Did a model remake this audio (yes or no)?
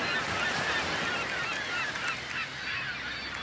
no